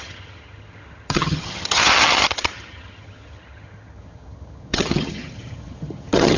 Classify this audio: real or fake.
fake